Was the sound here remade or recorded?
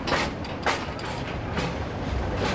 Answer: recorded